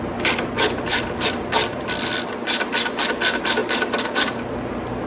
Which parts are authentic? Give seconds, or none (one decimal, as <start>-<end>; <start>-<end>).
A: 0.0-1.6; 2.3-5.1